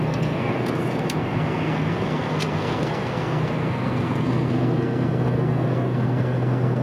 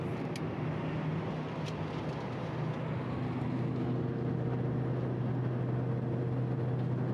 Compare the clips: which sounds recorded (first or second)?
second